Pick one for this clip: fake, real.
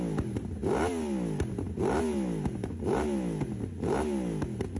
real